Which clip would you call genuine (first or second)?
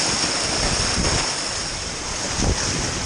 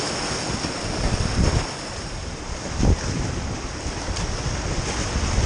second